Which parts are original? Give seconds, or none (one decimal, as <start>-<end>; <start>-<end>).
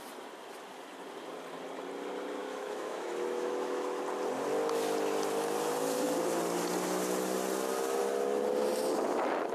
0.0-2.4; 4.0-9.5